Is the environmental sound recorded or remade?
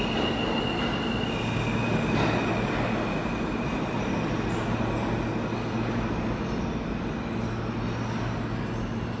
recorded